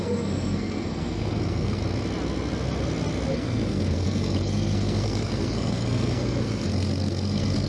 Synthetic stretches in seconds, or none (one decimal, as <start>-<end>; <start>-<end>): 0.0-1.8; 3.3-7.7